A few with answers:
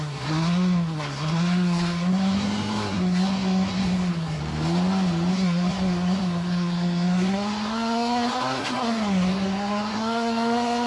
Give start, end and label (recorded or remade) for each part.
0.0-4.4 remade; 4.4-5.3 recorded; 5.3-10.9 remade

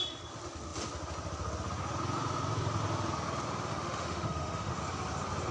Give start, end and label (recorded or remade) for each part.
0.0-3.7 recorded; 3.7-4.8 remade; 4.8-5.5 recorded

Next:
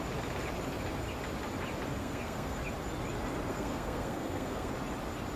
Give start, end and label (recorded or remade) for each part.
0.0-2.0 recorded; 2.0-2.6 remade; 2.6-3.5 recorded; 3.5-4.7 remade; 4.7-5.4 recorded

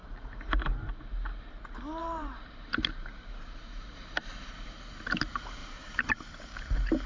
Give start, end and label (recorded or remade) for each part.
0.0-0.6 remade; 0.6-2.0 recorded; 2.0-4.5 remade; 4.5-5.6 recorded; 5.6-7.1 remade